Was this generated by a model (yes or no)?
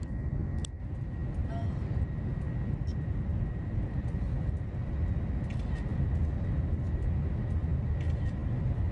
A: no